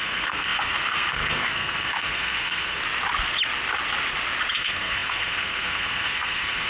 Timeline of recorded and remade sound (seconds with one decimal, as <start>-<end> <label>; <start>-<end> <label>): 0.0-2.8 remade; 2.8-4.5 recorded; 4.5-6.7 remade